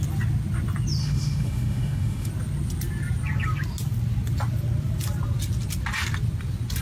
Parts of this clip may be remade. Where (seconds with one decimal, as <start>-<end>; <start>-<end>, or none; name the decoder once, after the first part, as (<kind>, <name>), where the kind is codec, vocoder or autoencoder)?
1.0-2.3 (autoencoder, DAC-VAE)